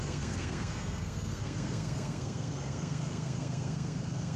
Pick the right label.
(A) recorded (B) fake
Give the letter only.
B